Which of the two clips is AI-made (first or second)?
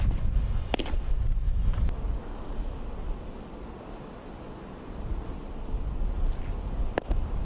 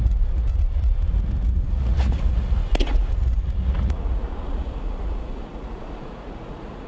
second